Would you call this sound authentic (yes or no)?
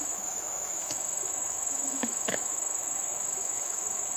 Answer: no